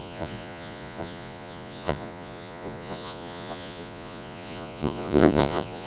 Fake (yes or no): yes